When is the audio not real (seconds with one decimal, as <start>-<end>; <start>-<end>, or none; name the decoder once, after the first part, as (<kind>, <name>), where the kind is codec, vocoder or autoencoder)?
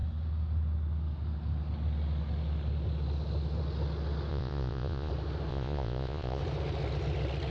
4.3-5.1 (vocoder, Vocos); 5.5-6.4